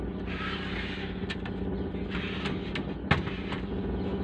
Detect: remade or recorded recorded